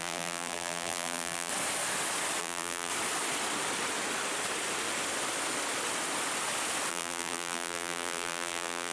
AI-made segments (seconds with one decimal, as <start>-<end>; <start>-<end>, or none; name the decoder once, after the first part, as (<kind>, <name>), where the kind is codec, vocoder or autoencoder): 0.0-1.5 (vocoder, BigVGAN v2); 2.4-2.9; 6.9-8.9